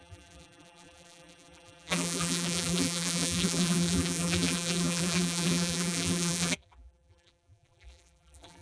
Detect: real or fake fake